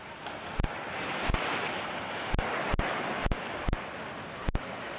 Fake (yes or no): no